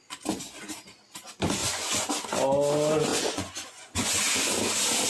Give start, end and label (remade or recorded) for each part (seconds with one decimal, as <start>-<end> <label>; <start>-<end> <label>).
0.0-1.6 recorded; 1.6-2.1 remade; 2.1-3.1 recorded; 3.1-4.5 remade; 4.5-5.1 recorded